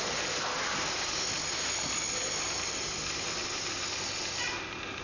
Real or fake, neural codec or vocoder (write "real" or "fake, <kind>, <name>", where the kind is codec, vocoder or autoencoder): real